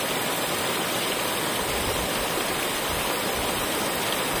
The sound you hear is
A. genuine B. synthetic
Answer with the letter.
A